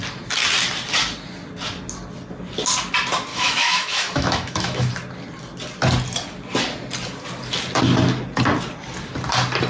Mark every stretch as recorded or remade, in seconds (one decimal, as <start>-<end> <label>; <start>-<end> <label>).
0.0-3.3 recorded; 3.3-4.9 remade; 4.9-9.7 recorded